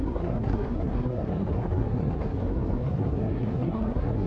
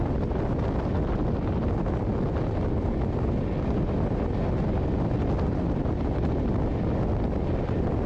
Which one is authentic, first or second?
second